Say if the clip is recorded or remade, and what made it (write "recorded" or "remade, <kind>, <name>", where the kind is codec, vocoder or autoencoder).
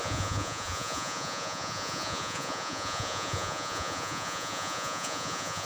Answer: remade, vocoder, Vocos